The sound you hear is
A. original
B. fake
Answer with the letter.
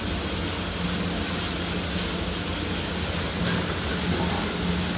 A